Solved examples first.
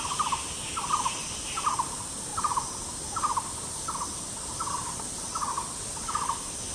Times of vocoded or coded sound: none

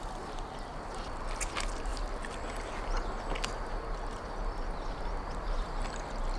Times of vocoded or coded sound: none

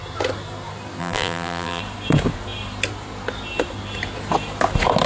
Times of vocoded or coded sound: 1.0-1.8

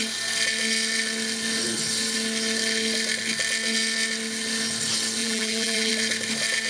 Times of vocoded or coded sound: 5.2-5.9

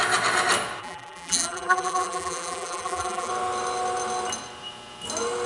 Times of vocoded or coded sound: 0.8-3.3